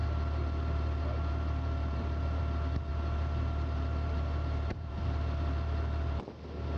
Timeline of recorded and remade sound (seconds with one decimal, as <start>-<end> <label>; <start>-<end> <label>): 0.0-2.4 remade; 2.4-2.9 recorded; 2.9-6.2 remade; 6.2-6.8 recorded